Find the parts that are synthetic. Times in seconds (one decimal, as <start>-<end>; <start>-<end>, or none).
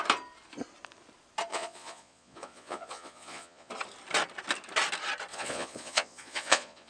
1.5-3.7; 5.3-6.9